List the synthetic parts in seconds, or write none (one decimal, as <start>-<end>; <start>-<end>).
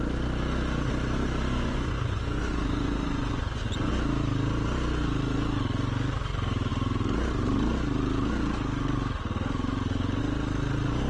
1.5-3.9